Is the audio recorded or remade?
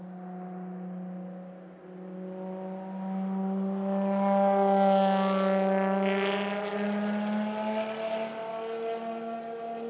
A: recorded